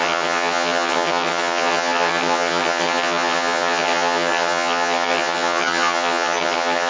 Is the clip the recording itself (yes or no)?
no